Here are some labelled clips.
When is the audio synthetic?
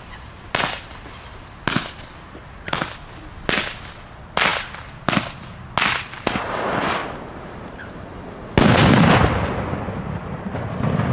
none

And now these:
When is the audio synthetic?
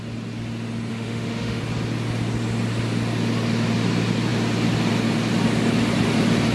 0.9-1.6 (autoencoder, DAC-VAE)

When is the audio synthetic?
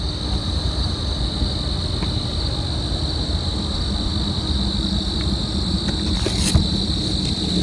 0.4-1.0 (vocoder, BigVGAN v2)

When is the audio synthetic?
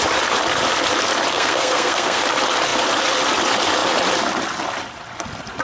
1.3-2.2 (codec, SNAC)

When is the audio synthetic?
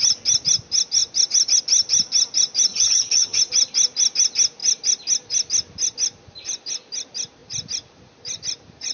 2.7-3.4 (vocoder, HiFi-GAN)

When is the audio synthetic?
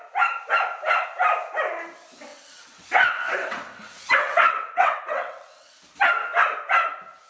2.3-5.7 (vocoder, WaveNeXt)